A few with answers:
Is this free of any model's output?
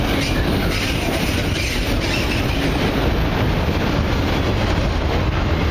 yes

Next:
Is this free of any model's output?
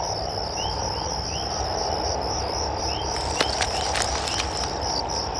yes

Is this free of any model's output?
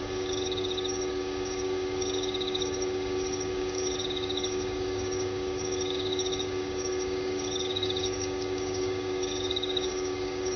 no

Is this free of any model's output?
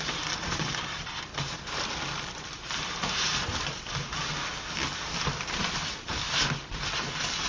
yes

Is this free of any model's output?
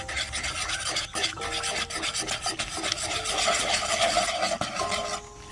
yes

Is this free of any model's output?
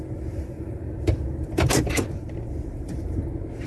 no